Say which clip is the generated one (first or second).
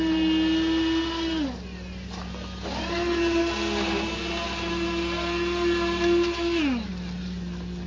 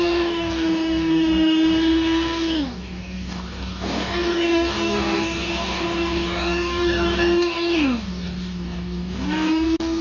second